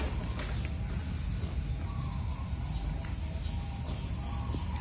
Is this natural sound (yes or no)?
yes